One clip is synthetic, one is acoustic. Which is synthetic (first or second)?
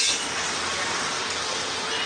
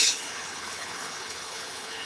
second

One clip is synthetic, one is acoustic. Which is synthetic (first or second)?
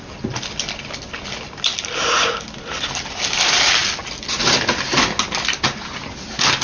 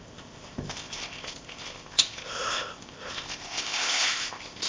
second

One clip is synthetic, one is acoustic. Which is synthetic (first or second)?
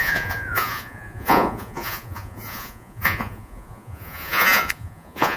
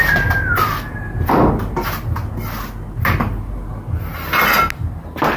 first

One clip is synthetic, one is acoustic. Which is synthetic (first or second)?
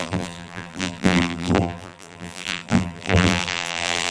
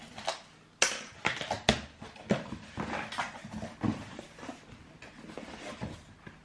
first